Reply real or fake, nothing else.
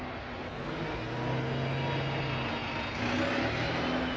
real